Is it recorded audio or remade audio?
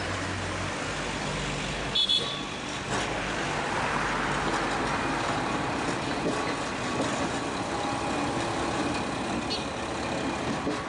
recorded